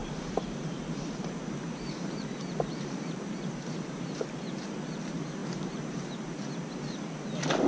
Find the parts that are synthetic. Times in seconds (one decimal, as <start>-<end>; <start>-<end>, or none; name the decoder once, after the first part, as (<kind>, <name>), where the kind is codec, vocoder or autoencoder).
0.0-4.2 (vocoder, BigVGAN v2); 5.4-6.5